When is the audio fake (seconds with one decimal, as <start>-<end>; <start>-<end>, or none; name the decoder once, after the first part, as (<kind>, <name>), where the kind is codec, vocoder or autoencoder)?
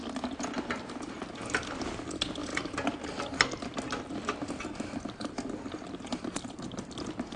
none